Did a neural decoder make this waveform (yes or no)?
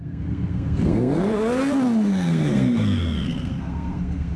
yes